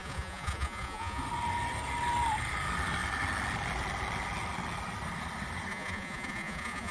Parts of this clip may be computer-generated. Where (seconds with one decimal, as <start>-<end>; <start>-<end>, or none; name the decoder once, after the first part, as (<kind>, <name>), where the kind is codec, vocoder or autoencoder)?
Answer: 0.0-1.2 (vocoder, Vocos); 5.7-6.9